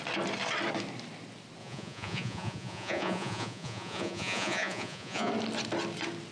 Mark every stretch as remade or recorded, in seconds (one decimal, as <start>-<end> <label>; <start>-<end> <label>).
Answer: 0.0-1.6 recorded; 1.6-5.3 remade; 5.3-6.3 recorded